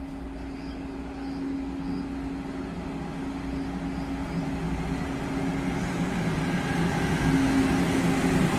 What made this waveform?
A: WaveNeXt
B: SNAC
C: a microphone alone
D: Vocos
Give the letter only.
C